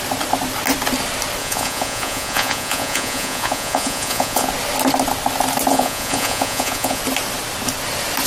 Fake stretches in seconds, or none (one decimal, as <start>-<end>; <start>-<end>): 1.4-4.5; 5.7-7.0